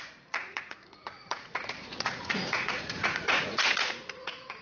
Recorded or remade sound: remade